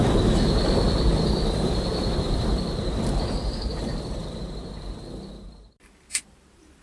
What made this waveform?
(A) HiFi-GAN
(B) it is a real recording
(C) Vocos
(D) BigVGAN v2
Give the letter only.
D